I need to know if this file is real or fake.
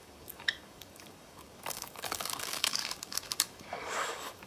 fake